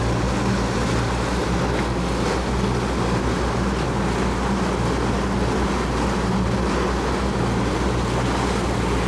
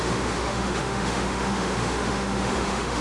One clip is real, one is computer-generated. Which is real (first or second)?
first